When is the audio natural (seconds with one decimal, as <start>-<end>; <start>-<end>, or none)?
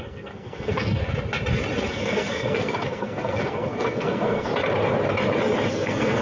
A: 1.0-1.9; 4.5-5.7